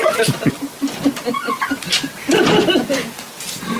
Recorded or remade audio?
recorded